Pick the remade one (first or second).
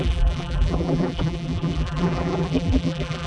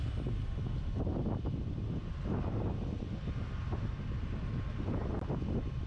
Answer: first